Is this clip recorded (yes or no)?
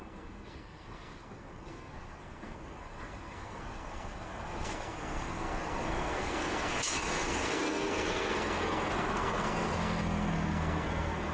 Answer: no